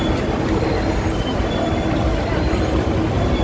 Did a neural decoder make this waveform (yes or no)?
no